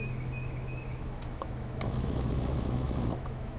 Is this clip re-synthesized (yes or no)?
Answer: yes